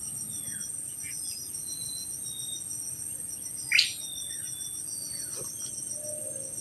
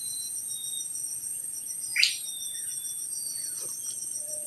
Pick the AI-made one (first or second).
second